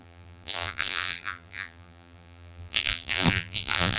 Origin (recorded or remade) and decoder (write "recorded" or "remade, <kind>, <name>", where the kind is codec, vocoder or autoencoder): remade, vocoder, BigVGAN v2